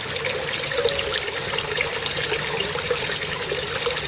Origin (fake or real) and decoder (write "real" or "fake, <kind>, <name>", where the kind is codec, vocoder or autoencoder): real